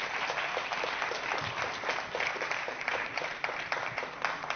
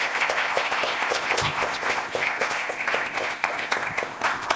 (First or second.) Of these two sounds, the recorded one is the first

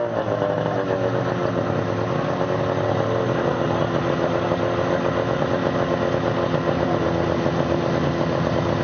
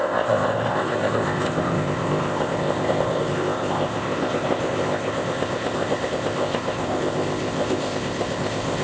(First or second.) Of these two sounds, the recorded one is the first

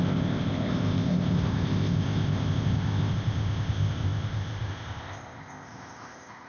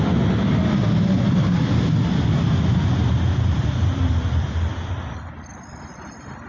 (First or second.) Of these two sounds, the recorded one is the second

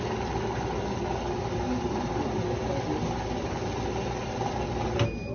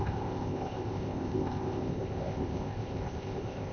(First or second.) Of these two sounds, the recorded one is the first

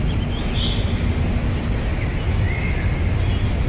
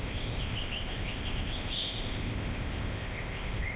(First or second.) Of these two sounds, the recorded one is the first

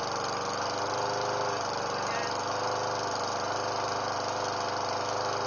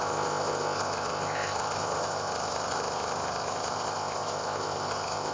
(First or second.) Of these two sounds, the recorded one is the first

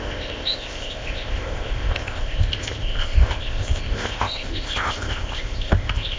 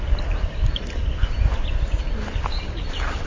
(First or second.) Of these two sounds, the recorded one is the second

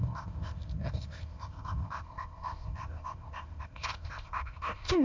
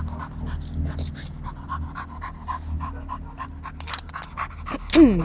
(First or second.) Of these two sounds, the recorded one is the second